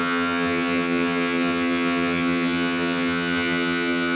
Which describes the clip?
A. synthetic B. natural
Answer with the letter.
A